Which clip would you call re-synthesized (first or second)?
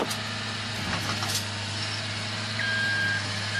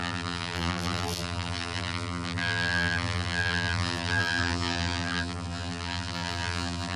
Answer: second